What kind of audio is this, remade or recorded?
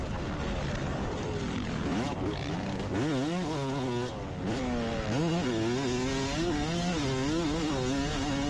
recorded